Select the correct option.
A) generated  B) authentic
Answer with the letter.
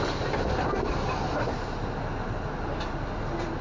B